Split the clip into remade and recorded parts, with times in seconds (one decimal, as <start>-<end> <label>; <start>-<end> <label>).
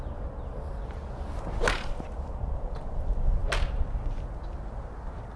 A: 0.0-5.4 recorded